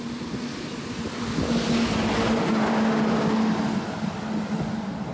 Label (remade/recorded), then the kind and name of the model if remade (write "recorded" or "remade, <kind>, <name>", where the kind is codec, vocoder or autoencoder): recorded